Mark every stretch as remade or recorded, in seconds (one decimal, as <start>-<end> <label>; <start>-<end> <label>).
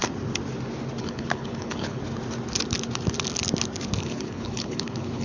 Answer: 0.0-1.0 recorded; 1.0-2.0 remade; 2.0-4.0 recorded; 4.0-5.2 remade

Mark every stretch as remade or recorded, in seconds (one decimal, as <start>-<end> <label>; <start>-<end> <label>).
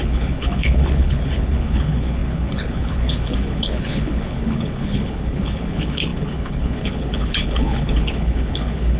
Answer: 0.0-9.0 remade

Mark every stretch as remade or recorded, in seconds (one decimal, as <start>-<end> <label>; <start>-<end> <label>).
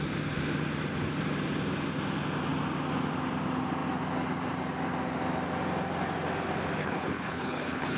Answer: 0.0-6.8 recorded; 6.8-8.0 remade